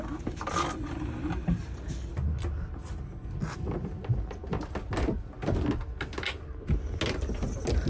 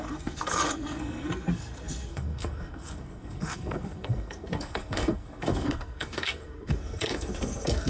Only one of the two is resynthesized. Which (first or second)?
second